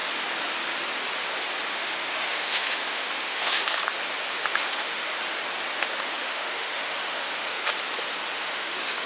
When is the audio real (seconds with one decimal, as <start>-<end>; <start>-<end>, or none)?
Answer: 0.0-1.7; 3.8-4.3; 5.1-6.1; 7.6-8.4